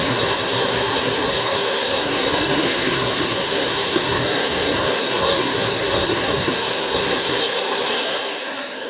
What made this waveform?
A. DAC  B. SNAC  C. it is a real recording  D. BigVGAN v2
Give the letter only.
B